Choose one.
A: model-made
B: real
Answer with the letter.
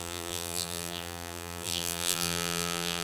A